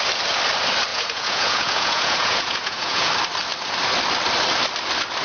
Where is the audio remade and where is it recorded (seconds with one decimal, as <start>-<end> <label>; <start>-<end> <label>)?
0.0-0.9 recorded; 0.9-3.1 remade; 3.1-5.2 recorded